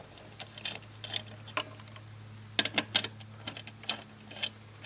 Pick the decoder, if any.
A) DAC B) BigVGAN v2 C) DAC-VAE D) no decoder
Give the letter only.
D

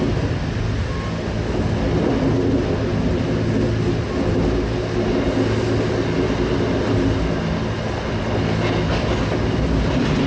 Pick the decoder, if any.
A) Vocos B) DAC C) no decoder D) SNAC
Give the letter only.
C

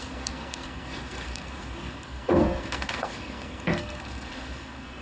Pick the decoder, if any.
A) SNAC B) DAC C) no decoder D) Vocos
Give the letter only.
A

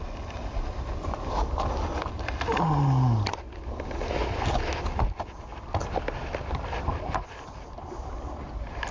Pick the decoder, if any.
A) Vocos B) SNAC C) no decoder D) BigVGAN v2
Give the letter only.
C